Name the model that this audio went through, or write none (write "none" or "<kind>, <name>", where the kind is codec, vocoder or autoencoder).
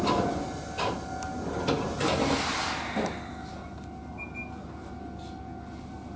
none